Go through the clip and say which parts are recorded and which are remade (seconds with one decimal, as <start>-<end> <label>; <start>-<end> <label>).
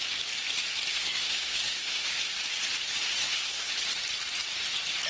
0.0-0.9 recorded; 0.9-2.1 remade; 2.1-3.2 recorded; 3.2-3.7 remade; 3.7-5.1 recorded